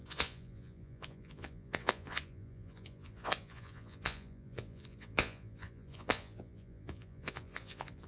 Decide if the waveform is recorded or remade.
remade